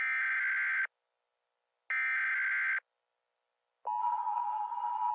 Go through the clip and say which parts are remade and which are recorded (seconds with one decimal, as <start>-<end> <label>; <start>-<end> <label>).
0.0-4.0 recorded; 4.0-5.1 remade